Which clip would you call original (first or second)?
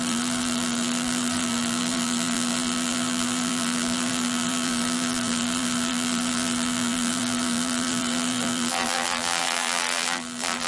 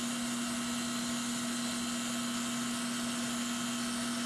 second